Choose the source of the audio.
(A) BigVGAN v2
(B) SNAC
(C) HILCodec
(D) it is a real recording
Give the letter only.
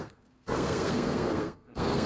B